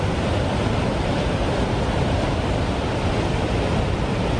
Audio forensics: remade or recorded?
recorded